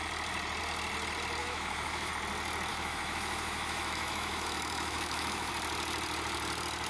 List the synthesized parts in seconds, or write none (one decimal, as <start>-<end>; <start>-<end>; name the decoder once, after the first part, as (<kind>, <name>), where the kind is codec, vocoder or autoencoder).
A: 1.4-2.1 (autoencoder, DAC-VAE); 2.7-5.5